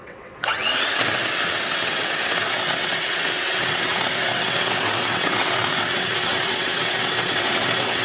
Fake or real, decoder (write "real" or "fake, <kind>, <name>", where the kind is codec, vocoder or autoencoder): fake, vocoder, WaveNeXt